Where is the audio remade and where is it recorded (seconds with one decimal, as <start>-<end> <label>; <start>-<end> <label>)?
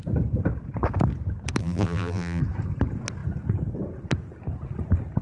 0.0-1.6 recorded; 1.6-2.4 remade; 2.4-5.2 recorded